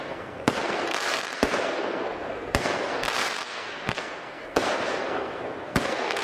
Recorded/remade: remade